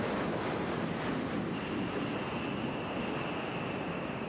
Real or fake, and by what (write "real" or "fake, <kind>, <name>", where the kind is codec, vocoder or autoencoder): real